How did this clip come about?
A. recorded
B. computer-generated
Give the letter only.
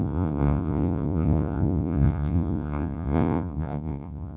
B